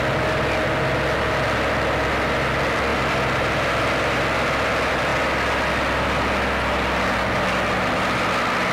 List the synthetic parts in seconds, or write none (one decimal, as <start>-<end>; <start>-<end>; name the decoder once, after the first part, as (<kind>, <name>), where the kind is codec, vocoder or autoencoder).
none

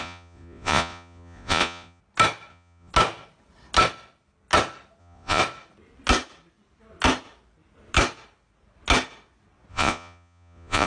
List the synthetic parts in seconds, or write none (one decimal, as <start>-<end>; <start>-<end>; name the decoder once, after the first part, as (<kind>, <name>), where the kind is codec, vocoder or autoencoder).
0.0-2.0 (vocoder, Vocos); 2.5-2.9; 5.0-5.4; 9.7-10.9

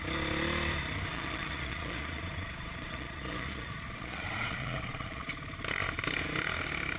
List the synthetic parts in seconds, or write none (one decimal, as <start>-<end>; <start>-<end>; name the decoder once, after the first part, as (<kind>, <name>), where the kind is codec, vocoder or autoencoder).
1.1-5.3 (vocoder, Vocos)

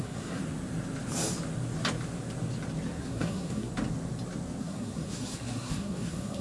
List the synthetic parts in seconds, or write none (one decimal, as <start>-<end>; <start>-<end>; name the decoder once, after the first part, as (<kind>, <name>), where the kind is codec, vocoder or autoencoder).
0.0-0.4 (codec, SNAC); 3.0-3.7; 4.6-6.4

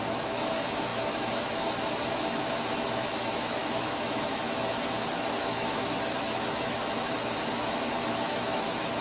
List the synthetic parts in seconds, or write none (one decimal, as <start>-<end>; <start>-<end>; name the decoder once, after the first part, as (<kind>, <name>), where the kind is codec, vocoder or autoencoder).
0.0-9.0 (autoencoder, DAC-VAE)

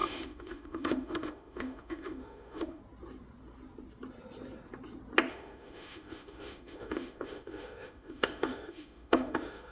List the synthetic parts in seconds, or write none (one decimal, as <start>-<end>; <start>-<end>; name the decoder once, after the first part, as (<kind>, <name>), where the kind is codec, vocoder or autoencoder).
0.0-2.8 (autoencoder, DAC-VAE); 5.3-9.7

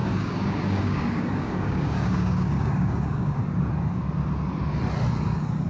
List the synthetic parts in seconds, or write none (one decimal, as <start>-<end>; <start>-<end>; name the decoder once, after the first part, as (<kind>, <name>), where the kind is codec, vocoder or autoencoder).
0.0-3.4 (codec, DAC)